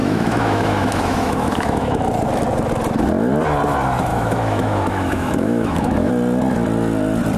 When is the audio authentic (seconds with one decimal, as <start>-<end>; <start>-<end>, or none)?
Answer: 2.0-4.1; 6.1-7.4